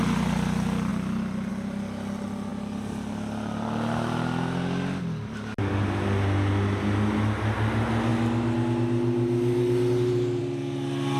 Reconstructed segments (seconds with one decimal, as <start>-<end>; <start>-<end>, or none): none